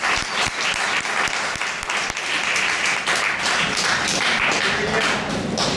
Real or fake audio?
real